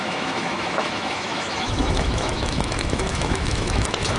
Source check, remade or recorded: remade